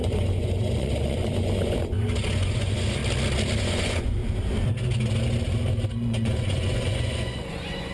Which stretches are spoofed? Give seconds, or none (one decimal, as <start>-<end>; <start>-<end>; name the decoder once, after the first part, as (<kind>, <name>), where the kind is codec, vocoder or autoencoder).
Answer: 0.0-3.0 (vocoder, Vocos); 3.6-4.2; 5.9-7.9